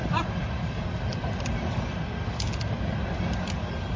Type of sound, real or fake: real